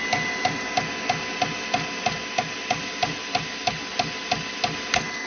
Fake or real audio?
real